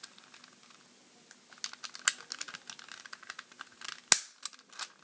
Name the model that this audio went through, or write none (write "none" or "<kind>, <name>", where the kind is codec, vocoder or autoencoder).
none